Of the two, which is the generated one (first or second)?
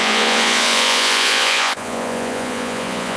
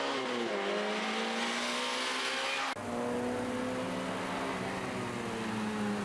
first